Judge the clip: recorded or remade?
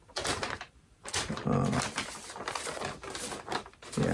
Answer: remade